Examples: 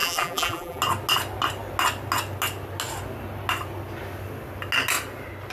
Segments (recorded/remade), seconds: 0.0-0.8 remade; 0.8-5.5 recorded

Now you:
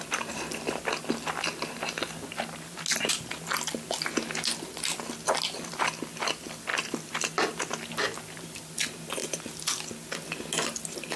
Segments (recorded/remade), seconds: 0.0-11.2 recorded

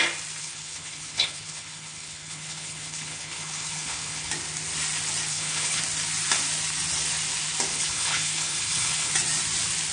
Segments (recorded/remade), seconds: 0.0-0.4 recorded; 0.4-4.3 remade; 4.3-5.3 recorded; 5.3-5.8 remade; 5.8-7.7 recorded; 7.7-9.1 remade; 9.1-9.9 recorded